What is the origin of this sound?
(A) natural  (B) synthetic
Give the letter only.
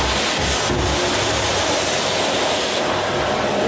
A